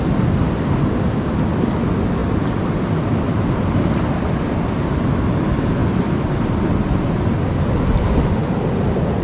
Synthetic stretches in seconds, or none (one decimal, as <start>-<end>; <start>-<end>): none